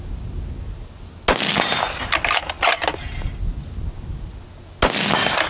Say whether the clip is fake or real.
real